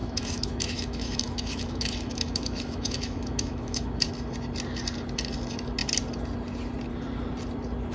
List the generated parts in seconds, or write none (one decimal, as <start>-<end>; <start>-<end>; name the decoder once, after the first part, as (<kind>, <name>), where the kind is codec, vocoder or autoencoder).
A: 0.0-4.1 (autoencoder, DAC-VAE)